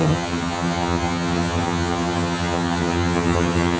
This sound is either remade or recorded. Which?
remade